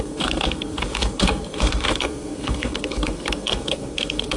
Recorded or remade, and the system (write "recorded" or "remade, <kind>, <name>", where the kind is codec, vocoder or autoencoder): remade, codec, SNAC